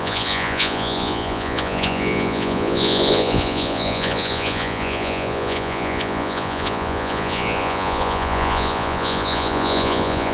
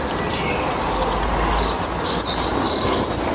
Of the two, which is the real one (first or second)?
second